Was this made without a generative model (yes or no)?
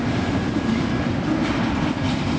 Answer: yes